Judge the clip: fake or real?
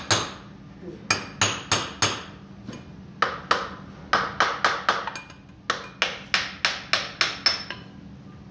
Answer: real